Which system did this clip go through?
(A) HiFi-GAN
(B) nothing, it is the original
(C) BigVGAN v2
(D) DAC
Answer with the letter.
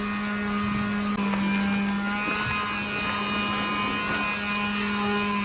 B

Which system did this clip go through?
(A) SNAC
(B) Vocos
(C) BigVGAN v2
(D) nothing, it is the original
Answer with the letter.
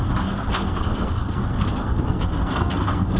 A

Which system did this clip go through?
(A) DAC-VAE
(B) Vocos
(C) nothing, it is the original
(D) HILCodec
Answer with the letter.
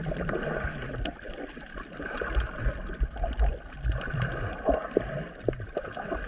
C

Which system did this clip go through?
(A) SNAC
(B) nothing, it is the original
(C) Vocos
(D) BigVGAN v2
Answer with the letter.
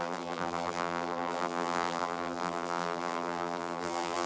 D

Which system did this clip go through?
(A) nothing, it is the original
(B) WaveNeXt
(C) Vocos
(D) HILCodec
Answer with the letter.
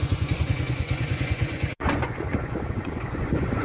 C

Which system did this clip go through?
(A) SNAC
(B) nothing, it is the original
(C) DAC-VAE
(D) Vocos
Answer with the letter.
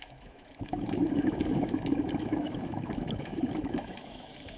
C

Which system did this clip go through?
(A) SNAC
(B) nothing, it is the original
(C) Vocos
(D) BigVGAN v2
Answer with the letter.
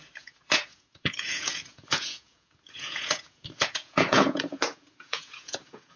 C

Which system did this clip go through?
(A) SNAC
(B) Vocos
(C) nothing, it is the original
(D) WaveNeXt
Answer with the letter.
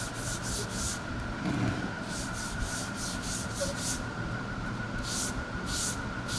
C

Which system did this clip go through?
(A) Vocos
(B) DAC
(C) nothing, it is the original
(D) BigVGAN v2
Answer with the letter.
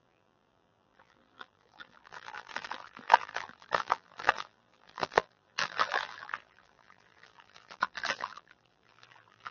D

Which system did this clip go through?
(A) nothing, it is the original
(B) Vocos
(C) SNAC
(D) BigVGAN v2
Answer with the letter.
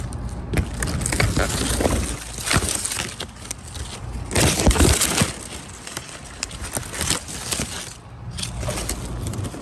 A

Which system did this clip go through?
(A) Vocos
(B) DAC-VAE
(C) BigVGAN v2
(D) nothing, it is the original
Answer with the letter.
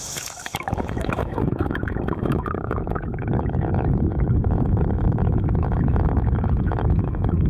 B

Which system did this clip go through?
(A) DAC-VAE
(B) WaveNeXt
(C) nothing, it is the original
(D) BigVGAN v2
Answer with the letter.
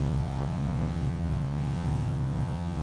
B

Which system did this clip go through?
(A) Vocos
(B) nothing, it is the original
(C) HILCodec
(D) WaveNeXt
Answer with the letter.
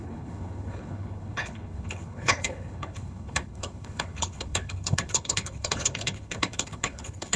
C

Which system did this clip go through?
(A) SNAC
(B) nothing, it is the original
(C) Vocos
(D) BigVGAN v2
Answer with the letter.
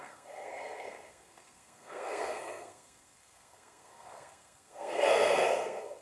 A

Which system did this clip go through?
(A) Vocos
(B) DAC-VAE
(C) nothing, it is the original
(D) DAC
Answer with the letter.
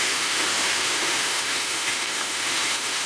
B